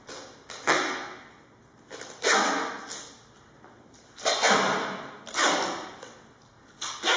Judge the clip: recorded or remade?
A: recorded